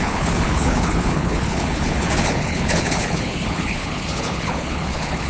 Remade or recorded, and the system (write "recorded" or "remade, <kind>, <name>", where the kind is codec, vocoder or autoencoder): remade, codec, HILCodec